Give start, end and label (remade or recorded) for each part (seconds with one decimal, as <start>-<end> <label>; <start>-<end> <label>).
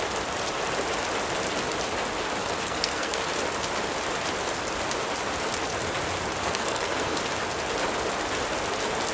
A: 0.0-2.4 recorded; 2.4-3.2 remade; 3.2-6.4 recorded; 6.4-7.2 remade; 7.2-9.1 recorded